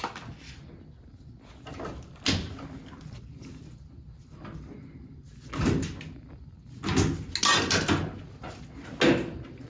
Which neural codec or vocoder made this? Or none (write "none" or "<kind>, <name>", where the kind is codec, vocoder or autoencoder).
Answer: none